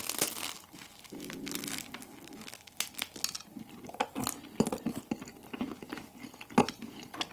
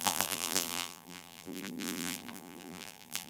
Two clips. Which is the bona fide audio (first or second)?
first